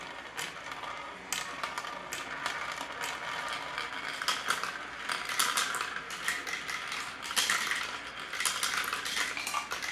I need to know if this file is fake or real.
real